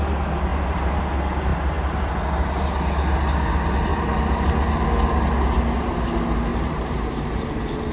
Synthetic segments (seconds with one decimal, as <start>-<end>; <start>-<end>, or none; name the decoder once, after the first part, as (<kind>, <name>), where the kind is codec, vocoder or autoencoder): 0.5-1.0 (vocoder, BigVGAN v2); 1.5-2.1; 3.9-4.6; 6.5-7.5